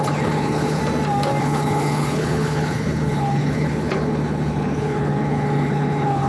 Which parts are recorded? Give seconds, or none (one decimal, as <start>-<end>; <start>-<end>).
0.8-1.4